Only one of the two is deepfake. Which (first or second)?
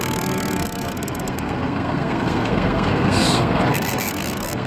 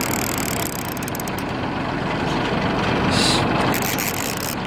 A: first